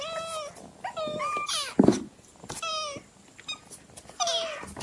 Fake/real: real